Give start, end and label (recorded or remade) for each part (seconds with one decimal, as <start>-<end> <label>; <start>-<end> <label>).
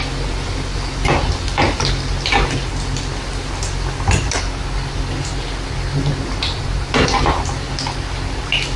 0.0-8.8 recorded